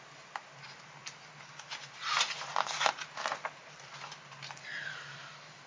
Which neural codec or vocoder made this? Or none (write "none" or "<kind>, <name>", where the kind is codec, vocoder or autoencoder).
none